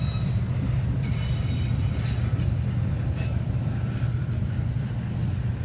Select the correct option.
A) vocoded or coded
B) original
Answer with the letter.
B